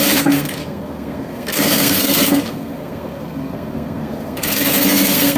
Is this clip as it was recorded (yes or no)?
no